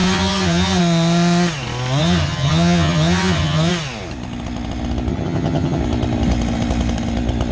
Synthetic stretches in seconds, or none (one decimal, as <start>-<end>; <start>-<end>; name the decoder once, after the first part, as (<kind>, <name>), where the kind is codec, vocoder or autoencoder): 0.0-0.8 (vocoder, HiFi-GAN); 2.0-3.7; 5.1-5.8